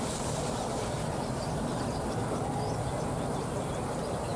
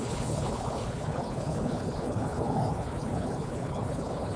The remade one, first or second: second